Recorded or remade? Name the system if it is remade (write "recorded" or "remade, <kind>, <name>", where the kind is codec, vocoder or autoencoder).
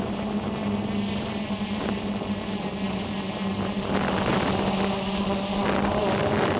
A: recorded